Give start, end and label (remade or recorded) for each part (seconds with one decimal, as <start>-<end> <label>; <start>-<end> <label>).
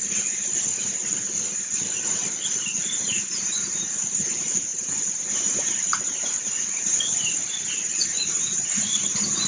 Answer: 0.0-9.5 remade